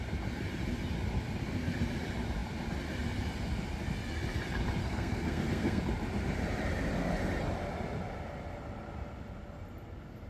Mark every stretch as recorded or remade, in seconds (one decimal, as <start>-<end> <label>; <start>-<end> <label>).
0.0-4.8 recorded; 4.8-5.8 remade; 5.8-10.3 recorded